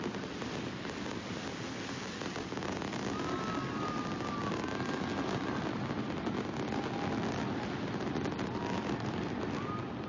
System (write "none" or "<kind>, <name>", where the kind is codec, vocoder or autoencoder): none